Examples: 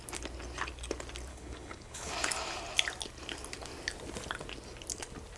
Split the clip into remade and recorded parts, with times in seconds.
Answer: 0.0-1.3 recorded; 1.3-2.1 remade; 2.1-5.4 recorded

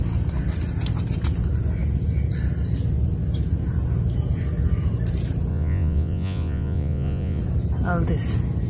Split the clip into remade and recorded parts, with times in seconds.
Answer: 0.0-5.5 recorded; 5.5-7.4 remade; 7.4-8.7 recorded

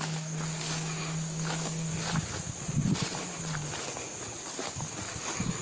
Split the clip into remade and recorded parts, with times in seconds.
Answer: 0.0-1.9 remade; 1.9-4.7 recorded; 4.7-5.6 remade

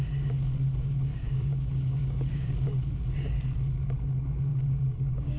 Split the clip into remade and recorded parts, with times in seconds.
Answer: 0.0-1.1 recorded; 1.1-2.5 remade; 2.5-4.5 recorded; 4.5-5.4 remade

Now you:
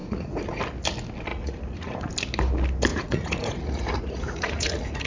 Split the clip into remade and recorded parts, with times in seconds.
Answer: 0.0-0.6 remade; 0.6-1.3 recorded; 1.3-2.1 remade; 2.1-2.9 recorded; 2.9-5.1 remade